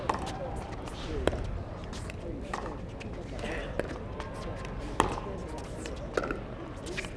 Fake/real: real